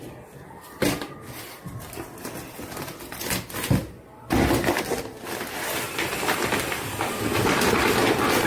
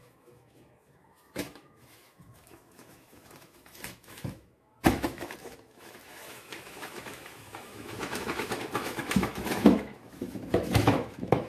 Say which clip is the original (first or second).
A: first